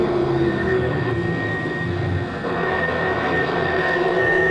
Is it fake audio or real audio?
fake